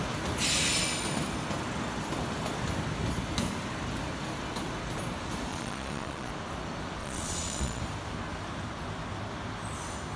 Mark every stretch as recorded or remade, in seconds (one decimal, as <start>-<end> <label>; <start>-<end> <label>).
0.0-5.5 recorded; 5.5-6.3 remade; 6.3-7.0 recorded; 7.0-7.8 remade; 7.8-10.2 recorded